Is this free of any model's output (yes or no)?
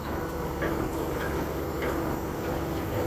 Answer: no